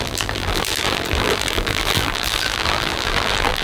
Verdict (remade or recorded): remade